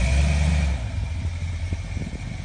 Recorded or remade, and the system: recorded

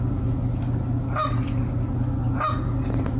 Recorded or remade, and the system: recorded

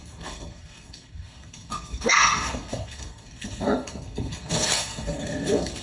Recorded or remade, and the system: remade, codec, SNAC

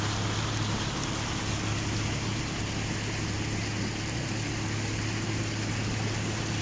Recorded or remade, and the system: recorded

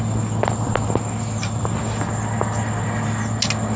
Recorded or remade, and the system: recorded